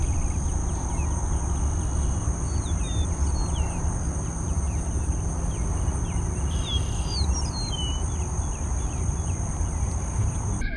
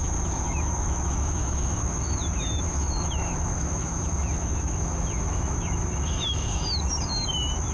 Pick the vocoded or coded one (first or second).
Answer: second